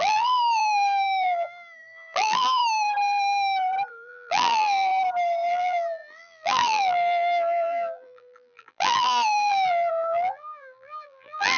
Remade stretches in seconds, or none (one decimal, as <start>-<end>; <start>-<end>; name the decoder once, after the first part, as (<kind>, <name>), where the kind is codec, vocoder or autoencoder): 0.0-2.6 (vocoder, BigVGAN v2); 3.9-4.9; 5.5-11.6